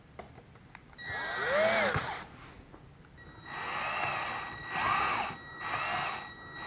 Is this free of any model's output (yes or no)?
yes